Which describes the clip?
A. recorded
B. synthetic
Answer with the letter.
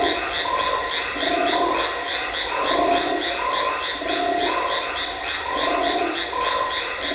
B